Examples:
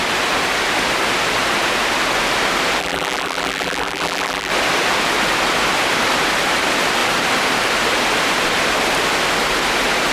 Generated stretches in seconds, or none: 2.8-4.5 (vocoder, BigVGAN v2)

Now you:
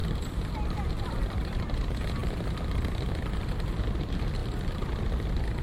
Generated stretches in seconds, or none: 0.0-5.6 (vocoder, BigVGAN v2)

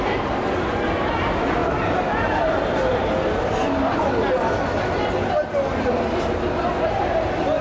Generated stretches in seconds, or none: none

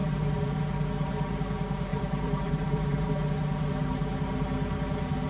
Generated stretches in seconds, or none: 0.0-0.6 (vocoder, BigVGAN v2); 1.9-3.1

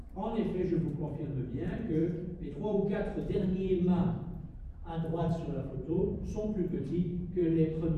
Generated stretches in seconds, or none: 0.0-2.0 (vocoder, BigVGAN v2); 2.5-8.0

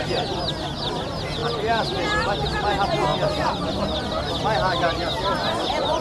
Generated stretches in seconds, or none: none

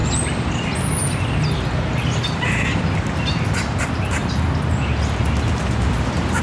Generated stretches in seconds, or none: none

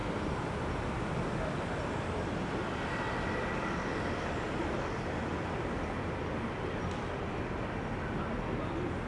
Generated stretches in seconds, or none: 0.0-1.9 (vocoder, BigVGAN v2)